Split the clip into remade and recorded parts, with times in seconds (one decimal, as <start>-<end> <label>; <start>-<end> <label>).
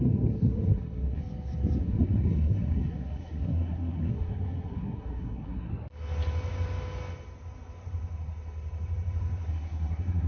0.0-1.2 remade; 1.2-1.8 recorded; 1.8-5.7 remade; 5.7-9.5 recorded; 9.5-10.3 remade